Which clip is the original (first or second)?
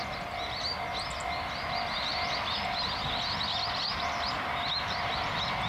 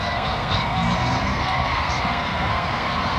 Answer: first